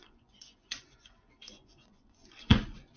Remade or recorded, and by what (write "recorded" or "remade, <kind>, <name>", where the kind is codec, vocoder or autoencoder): remade, vocoder, Vocos